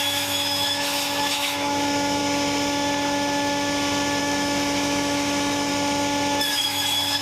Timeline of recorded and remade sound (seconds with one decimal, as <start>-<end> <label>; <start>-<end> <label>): 0.0-2.2 remade; 2.2-4.2 recorded; 4.2-5.7 remade; 5.7-6.5 recorded; 6.5-7.2 remade